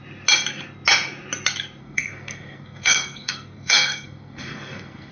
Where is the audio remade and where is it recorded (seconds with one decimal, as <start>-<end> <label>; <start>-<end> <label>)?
0.0-1.8 recorded; 1.8-5.1 remade